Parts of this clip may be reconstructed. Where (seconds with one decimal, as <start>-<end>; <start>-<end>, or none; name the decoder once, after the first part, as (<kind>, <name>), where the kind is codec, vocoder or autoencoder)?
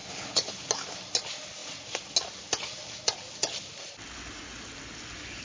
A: 0.0-0.5 (codec, HILCodec)